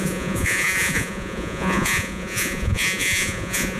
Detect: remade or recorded remade